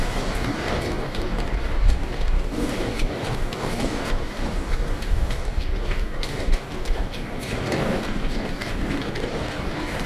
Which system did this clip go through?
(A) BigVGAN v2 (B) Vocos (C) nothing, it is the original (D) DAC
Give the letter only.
D